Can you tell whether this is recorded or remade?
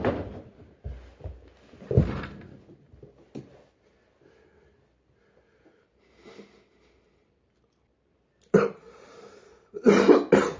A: recorded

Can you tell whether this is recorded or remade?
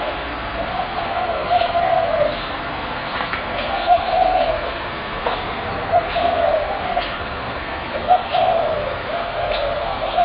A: remade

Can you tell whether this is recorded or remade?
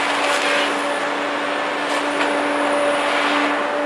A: recorded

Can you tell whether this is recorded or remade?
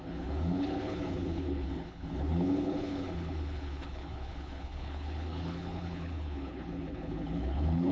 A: remade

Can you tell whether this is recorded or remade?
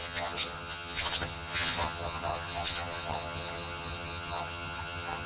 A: remade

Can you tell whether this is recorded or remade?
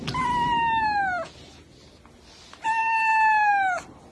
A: recorded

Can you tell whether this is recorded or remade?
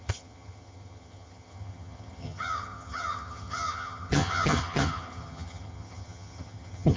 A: remade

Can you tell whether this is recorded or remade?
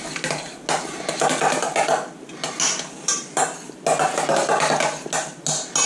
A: recorded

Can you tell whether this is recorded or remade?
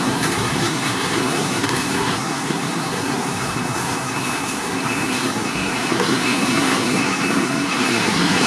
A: remade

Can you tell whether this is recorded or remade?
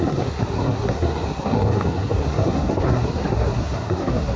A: remade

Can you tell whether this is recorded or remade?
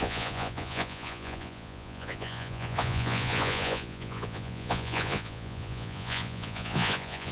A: remade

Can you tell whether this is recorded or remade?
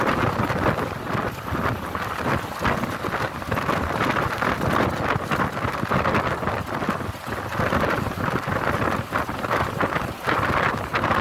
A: recorded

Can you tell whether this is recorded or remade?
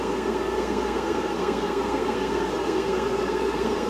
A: remade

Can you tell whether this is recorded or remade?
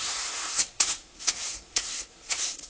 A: remade